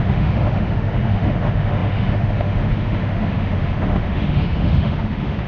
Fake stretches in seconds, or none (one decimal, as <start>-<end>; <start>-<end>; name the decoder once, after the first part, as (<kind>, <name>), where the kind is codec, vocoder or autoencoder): 0.0-5.5 (autoencoder, DAC-VAE)